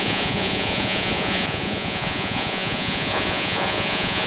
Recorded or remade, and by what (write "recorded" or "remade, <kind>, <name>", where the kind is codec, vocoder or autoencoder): remade, vocoder, Vocos